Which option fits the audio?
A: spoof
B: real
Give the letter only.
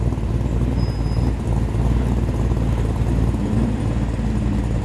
B